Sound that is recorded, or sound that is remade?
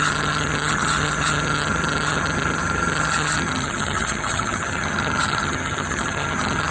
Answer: remade